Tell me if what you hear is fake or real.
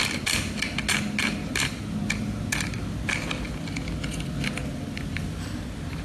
real